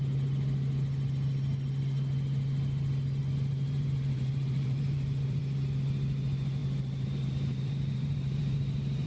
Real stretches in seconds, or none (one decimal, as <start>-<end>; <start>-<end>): 0.0-3.2; 5.4-6.6